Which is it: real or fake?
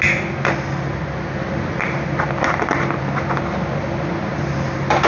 real